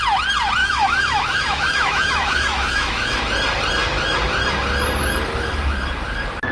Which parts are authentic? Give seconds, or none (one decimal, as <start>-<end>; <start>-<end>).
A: 0.0-0.6; 3.2-6.5